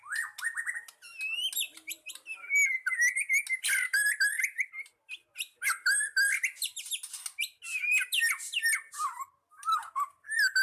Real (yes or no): yes